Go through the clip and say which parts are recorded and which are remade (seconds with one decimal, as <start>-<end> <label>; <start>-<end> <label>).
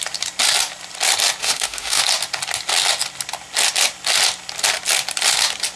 0.0-1.4 recorded; 1.4-2.0 remade; 2.0-5.8 recorded